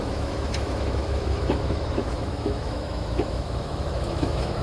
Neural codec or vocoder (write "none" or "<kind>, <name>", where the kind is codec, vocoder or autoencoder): autoencoder, DAC-VAE